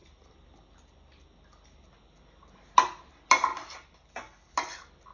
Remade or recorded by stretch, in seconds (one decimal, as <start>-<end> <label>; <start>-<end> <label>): 0.0-5.1 recorded